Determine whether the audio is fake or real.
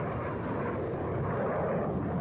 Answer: real